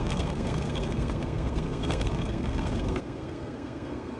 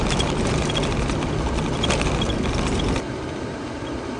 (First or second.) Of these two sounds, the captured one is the second